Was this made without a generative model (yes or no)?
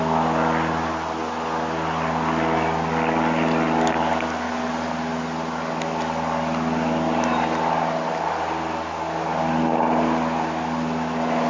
yes